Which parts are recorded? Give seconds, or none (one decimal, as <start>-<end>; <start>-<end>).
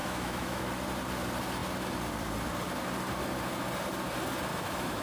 0.7-4.5